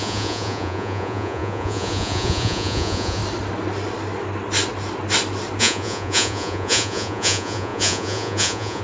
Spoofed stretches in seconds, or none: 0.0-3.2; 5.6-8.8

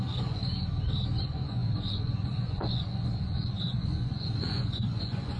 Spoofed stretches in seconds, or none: 0.0-0.4; 1.2-5.4

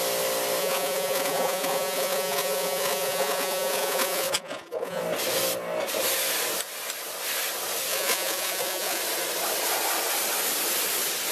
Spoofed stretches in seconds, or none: 0.6-5.0; 7.9-9.0

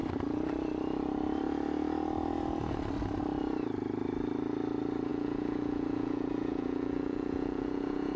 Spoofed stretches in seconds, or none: 5.1-8.2

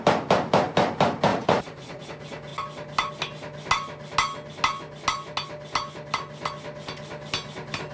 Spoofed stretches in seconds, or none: 1.3-2.0